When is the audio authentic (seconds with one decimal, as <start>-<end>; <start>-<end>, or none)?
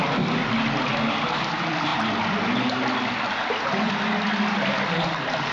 0.0-5.5